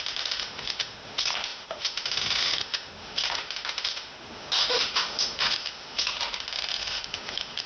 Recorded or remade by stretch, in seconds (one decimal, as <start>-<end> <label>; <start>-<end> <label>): 0.0-7.7 remade